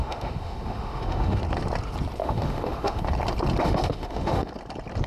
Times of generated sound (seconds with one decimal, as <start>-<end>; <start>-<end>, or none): 0.0-1.4; 2.2-3.0; 3.6-4.5